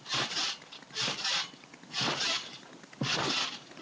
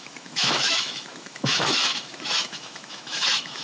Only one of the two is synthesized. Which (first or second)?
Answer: second